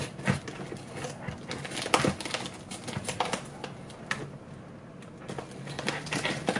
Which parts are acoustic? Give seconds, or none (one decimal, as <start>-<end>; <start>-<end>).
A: 0.0-6.6